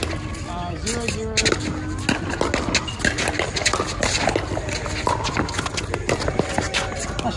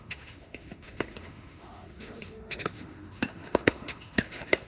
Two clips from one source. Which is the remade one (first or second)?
second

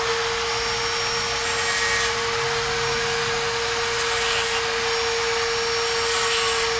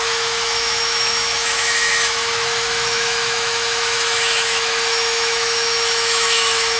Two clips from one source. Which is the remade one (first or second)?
second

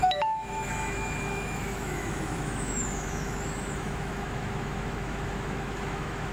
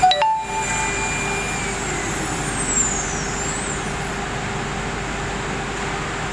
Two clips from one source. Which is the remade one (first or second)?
first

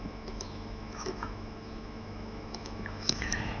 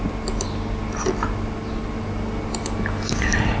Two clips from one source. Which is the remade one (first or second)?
first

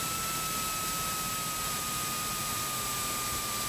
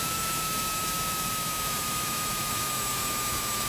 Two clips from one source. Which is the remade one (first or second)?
second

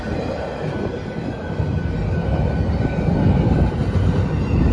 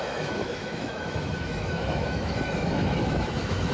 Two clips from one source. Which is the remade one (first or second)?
second